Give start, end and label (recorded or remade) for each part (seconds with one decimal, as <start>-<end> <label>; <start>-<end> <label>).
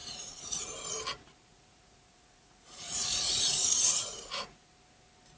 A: 0.0-0.6 remade; 0.6-1.5 recorded; 1.5-4.7 remade; 4.7-5.4 recorded